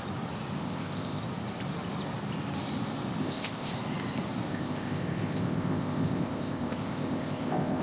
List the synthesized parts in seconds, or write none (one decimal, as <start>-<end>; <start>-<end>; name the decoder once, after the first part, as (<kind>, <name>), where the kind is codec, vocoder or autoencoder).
0.6-1.2 (codec, ZipCodec); 3.2-3.7; 4.5-7.8